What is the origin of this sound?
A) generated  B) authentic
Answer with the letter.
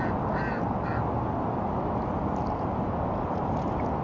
B